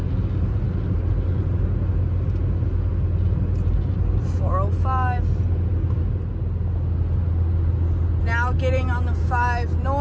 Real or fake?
real